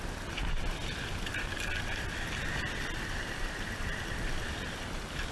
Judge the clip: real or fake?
real